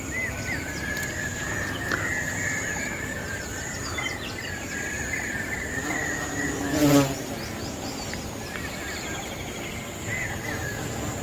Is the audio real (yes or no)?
yes